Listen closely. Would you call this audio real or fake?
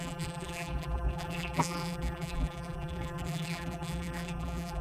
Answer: fake